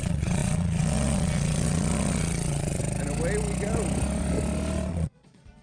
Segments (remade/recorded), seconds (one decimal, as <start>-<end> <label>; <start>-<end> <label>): 0.0-2.8 remade; 2.8-4.9 recorded; 4.9-5.6 remade